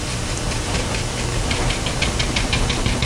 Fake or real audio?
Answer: real